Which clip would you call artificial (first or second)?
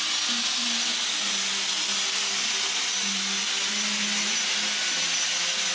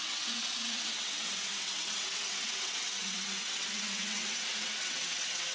second